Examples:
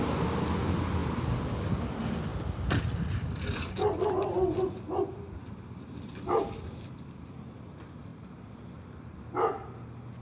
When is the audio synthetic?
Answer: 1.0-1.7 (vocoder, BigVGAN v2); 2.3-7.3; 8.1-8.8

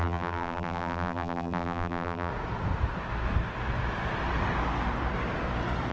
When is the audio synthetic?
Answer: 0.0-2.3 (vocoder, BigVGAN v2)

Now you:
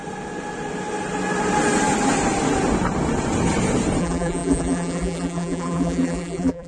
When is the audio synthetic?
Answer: 4.0-6.7 (vocoder, BigVGAN v2)

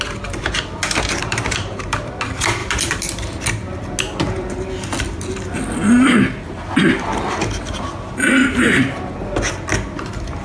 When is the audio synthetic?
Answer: 1.2-2.1 (vocoder, BigVGAN v2); 8.4-9.1

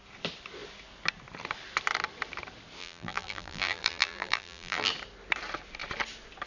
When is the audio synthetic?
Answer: 2.8-4.9 (vocoder, BigVGAN v2)

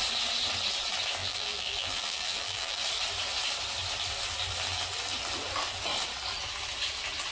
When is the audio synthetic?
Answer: 1.2-2.8 (vocoder, BigVGAN v2)

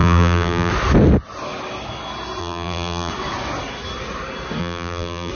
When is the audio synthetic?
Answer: 0.0-0.7 (vocoder, BigVGAN v2); 2.4-3.1; 4.6-5.3